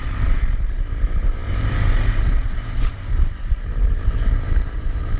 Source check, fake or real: fake